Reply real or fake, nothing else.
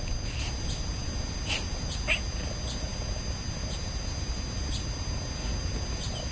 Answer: real